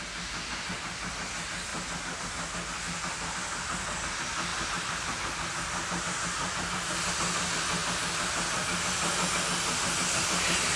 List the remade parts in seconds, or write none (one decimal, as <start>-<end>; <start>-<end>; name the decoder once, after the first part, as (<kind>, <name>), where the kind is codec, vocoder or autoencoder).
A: none